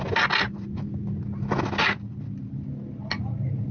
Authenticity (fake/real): real